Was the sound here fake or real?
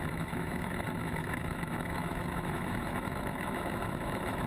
fake